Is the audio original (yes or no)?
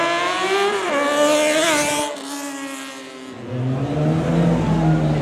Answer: yes